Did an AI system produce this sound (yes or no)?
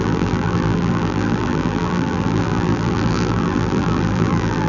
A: yes